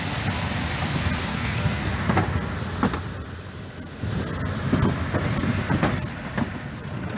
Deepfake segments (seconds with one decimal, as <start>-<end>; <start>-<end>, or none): 1.3-1.9

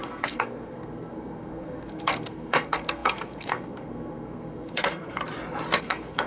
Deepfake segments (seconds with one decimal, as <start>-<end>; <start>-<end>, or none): 0.0-5.2; 5.8-6.3

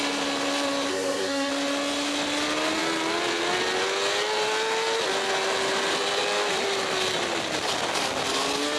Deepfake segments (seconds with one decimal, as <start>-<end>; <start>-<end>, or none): 0.9-1.5

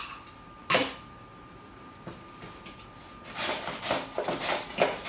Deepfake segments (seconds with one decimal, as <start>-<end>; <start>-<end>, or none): none

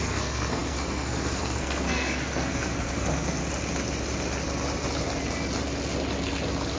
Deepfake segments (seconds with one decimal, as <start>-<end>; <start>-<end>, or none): 0.0-3.4

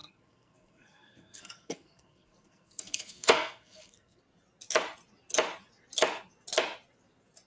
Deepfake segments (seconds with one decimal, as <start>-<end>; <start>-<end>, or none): 0.0-4.2

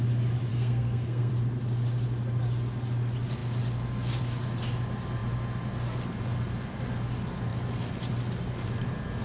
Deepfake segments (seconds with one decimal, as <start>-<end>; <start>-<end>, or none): 0.5-1.3

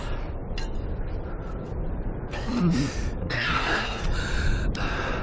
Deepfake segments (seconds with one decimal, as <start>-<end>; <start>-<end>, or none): 3.2-4.0